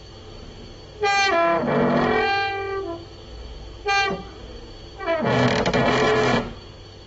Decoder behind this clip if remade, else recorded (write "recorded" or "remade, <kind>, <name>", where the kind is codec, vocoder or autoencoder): recorded